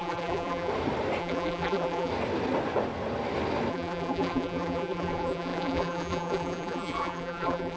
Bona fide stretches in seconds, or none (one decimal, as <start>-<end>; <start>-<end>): 0.7-1.2; 2.1-3.7